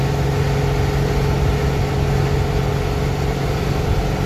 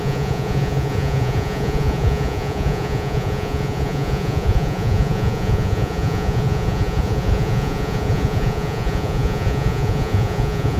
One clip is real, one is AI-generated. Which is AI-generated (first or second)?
second